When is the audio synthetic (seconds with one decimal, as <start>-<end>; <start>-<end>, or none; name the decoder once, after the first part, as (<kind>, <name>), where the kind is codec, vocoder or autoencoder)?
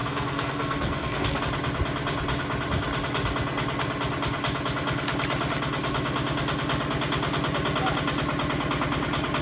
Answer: 0.0-1.4 (codec, SNAC)